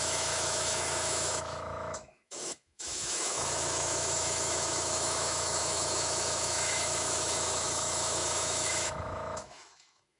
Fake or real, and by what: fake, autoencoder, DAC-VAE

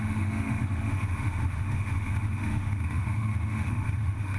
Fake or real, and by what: fake, autoencoder, DAC-VAE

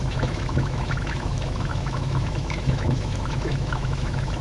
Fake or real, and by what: fake, autoencoder, DAC-VAE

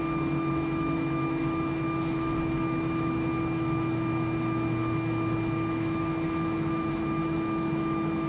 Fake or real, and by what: fake, autoencoder, DAC-VAE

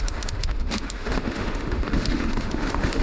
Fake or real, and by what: fake, autoencoder, DAC-VAE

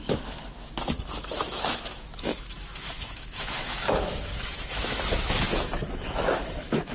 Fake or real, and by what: fake, autoencoder, DAC-VAE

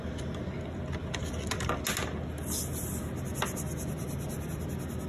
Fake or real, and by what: real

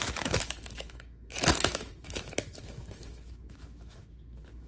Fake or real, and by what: fake, autoencoder, DAC-VAE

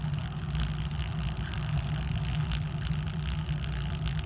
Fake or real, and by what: real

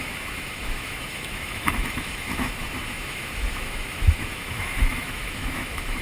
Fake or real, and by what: fake, autoencoder, DAC-VAE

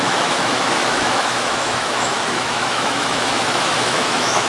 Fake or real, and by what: fake, autoencoder, DAC-VAE